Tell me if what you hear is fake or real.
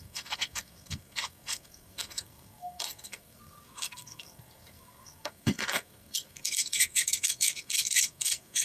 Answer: fake